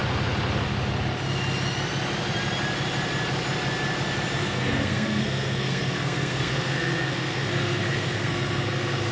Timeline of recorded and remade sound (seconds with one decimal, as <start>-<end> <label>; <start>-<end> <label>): 0.0-4.4 recorded; 4.4-9.1 remade